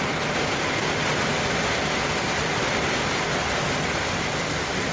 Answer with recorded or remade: recorded